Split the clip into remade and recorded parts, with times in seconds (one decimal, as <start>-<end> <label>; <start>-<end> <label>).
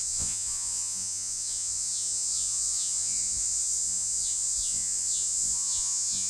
0.0-6.3 remade